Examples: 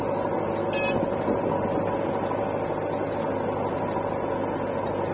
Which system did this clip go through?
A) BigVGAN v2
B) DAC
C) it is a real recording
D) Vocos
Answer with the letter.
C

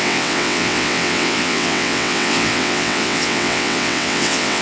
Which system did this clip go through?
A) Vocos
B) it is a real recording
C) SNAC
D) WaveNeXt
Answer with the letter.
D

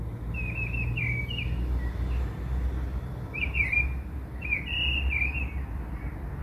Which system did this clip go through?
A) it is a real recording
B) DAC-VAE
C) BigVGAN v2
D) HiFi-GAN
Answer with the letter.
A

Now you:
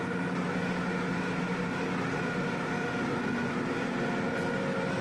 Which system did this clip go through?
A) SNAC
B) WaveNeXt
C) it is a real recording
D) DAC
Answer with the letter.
C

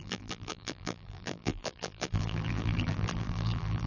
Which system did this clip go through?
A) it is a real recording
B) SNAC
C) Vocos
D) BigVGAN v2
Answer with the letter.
D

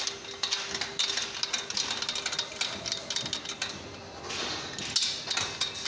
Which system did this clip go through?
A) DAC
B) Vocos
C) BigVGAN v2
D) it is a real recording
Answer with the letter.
D